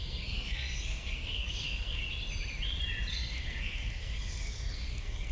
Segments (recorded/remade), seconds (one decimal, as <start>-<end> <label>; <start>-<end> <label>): 0.0-2.0 remade; 2.0-3.1 recorded; 3.1-5.3 remade